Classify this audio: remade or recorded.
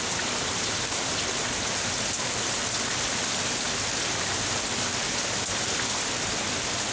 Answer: recorded